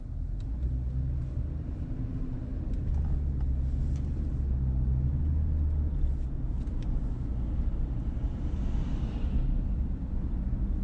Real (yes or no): yes